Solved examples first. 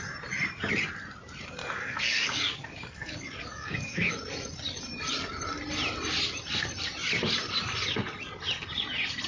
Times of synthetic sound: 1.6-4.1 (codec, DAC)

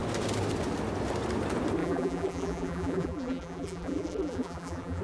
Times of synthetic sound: 1.8-5.0 (vocoder, BigVGAN v2)

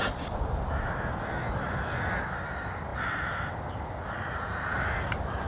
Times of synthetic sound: none

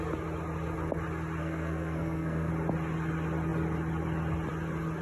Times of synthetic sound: 1.4-2.5 (codec, SNAC)

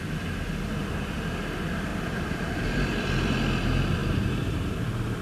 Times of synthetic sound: 1.9-2.6 (vocoder, BigVGAN v2); 4.0-5.2

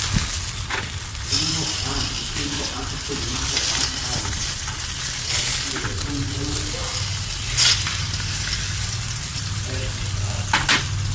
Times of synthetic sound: 2.8-4.7 (vocoder, BigVGAN v2); 9.3-10.0